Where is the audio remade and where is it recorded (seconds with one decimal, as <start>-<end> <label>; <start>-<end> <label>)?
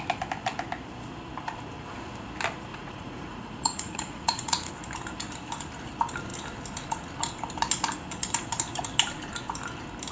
0.0-2.7 recorded; 2.7-4.7 remade; 4.7-10.1 recorded